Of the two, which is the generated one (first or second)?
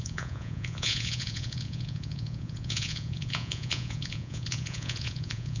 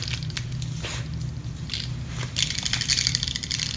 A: first